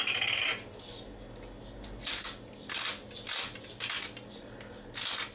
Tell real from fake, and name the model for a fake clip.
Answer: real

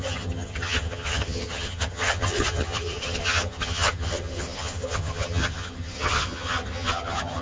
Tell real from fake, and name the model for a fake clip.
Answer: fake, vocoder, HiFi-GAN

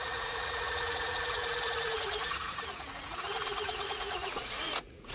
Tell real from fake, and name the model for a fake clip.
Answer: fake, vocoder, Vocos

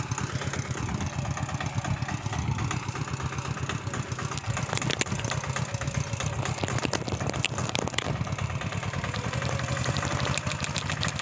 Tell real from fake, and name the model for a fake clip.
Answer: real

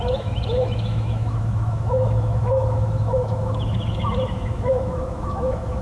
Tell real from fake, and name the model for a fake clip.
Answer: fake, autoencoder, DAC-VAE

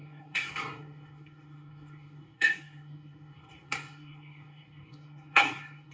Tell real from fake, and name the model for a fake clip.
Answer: fake, codec, SNAC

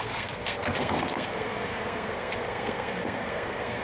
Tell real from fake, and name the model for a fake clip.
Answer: fake, codec, SNAC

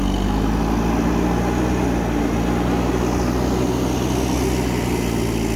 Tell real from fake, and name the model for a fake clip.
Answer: real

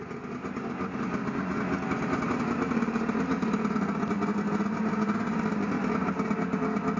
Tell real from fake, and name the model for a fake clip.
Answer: real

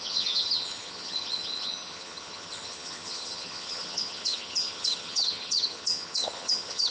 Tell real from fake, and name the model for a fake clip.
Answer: fake, vocoder, HiFi-GAN